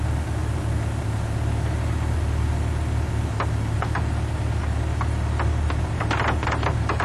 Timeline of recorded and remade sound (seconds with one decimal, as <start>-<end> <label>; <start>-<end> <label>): 0.0-7.0 recorded